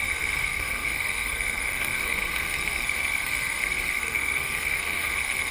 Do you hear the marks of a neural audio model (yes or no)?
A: yes